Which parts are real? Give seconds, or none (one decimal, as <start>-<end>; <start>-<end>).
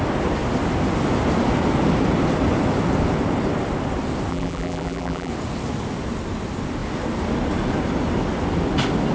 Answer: 0.0-4.3; 5.3-9.1